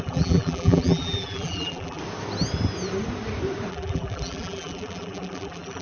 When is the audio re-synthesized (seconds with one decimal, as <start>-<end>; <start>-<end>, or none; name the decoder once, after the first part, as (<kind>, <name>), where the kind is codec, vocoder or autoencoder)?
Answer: 0.0-2.0 (vocoder, BigVGAN v2); 3.7-5.8